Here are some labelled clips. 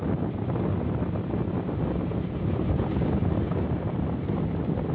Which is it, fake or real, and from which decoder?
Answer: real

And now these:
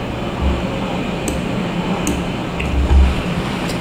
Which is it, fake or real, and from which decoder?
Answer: real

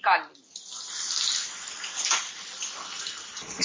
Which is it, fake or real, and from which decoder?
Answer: real